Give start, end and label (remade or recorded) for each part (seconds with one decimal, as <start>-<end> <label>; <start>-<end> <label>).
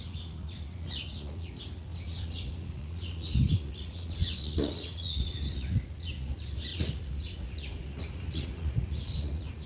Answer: 0.0-9.7 remade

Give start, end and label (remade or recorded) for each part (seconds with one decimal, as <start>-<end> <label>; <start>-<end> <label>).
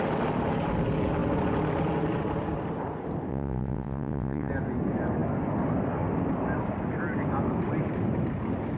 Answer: 0.0-3.3 recorded; 3.3-4.5 remade; 4.5-8.8 recorded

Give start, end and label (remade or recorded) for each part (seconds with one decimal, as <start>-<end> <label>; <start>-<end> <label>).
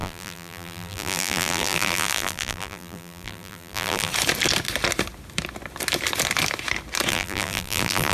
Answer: 0.0-4.1 remade; 4.1-7.1 recorded; 7.1-8.1 remade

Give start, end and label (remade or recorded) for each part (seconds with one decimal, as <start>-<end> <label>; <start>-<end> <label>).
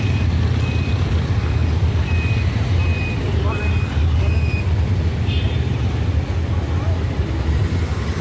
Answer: 0.0-8.2 recorded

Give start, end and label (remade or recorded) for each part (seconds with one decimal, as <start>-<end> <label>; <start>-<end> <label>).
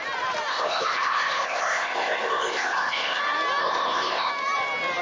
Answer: 0.0-0.5 recorded; 0.5-3.2 remade; 3.2-3.6 recorded; 3.6-4.3 remade; 4.3-5.0 recorded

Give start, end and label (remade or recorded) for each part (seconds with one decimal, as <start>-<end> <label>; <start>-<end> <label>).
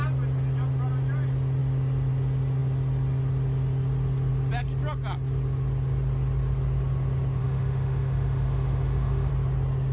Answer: 0.0-7.4 recorded; 7.4-9.3 remade; 9.3-9.9 recorded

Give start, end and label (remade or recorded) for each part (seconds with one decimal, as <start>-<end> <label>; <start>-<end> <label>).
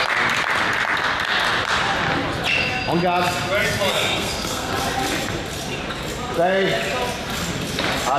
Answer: 0.0-3.9 recorded; 3.9-4.7 remade; 4.7-8.2 recorded